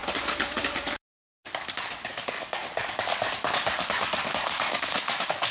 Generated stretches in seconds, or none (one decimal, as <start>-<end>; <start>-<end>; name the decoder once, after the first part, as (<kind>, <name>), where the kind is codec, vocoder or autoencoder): 0.7-5.5 (codec, DAC)